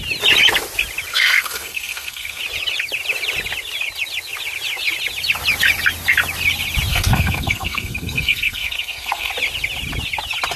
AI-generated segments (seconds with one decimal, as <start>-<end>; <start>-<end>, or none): 1.1-2.4; 6.9-9.3

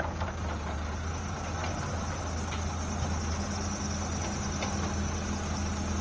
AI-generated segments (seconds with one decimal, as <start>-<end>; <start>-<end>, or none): none

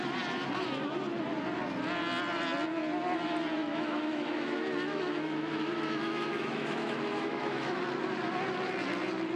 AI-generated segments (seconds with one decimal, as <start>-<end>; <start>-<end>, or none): 3.6-7.8

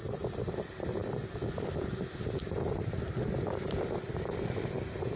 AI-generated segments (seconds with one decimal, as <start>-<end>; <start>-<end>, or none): none